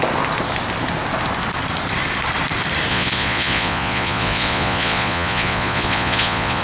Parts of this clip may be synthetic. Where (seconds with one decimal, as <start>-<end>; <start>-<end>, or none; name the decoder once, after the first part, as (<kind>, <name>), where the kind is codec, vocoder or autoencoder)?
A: 2.9-6.6 (vocoder, Vocos)